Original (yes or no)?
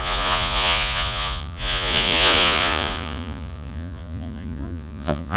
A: no